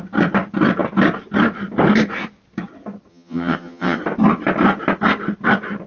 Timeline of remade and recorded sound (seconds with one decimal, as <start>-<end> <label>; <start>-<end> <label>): 0.0-3.1 recorded; 3.1-4.0 remade; 4.0-5.9 recorded